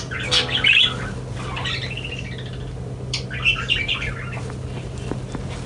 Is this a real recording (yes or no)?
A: yes